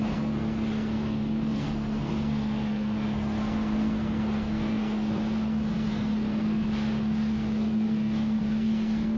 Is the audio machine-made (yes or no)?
yes